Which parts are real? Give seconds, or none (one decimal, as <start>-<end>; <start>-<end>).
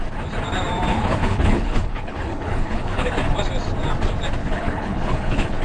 0.0-0.9; 3.1-4.4